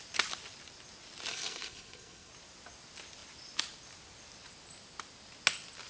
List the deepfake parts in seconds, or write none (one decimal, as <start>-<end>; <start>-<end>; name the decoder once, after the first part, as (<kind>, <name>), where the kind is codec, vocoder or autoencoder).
1.3-2.3 (codec, SNAC)